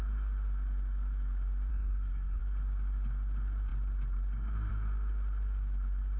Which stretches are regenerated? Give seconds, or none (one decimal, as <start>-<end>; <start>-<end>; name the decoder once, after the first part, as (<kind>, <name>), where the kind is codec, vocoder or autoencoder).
1.7-2.4 (codec, SNAC)